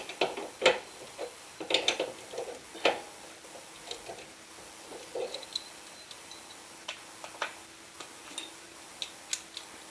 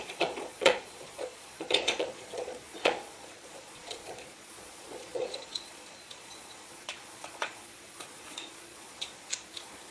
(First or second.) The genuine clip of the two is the first